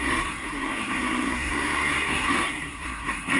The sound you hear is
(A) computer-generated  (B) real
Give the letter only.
A